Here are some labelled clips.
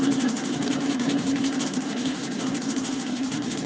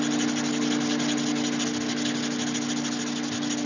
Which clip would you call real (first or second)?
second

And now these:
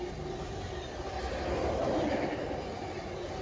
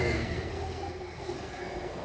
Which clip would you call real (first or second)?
first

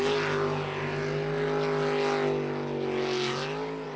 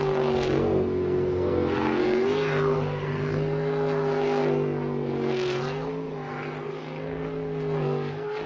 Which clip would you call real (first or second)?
first